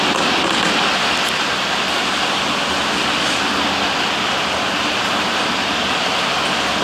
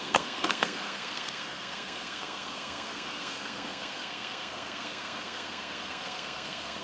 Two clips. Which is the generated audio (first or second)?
second